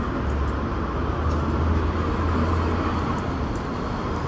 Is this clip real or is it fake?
real